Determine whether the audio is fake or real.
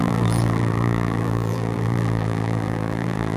fake